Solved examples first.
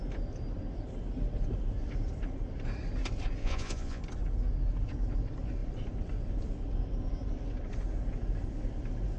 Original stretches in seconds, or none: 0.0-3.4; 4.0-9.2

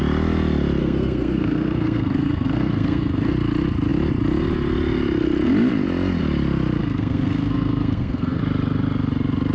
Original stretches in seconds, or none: 0.0-0.8; 3.3-6.8; 8.4-9.5

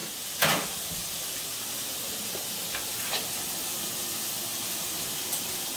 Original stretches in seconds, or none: 0.0-4.5; 5.1-5.8